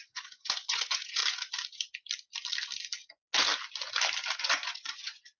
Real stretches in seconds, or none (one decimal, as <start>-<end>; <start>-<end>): 1.2-4.4

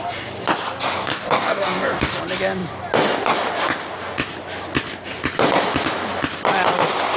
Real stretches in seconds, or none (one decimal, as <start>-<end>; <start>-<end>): 0.0-1.1; 2.2-7.2

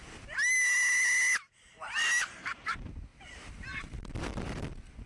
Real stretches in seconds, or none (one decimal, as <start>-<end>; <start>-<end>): 0.0-2.2

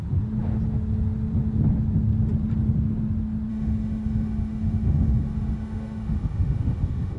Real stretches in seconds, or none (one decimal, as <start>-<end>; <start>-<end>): 0.0-3.5